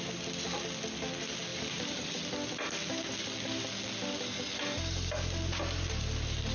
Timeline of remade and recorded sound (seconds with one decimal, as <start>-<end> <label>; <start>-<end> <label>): 0.0-1.5 recorded; 1.5-2.1 remade; 2.1-6.5 recorded